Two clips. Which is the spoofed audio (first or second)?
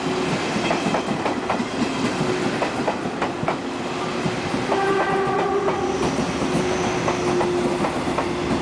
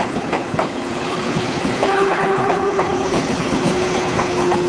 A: second